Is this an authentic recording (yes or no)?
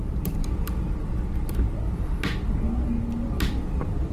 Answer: yes